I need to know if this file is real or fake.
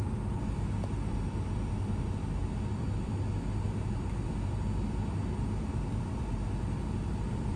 real